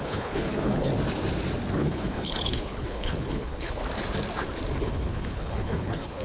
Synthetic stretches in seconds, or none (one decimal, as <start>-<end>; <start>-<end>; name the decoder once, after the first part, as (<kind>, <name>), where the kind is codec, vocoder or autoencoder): 0.0-0.9 (codec, HILCodec); 1.7-3.8; 4.8-6.2